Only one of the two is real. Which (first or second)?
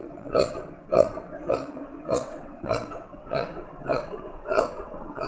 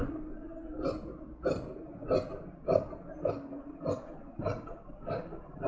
second